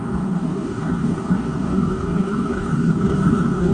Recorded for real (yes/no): no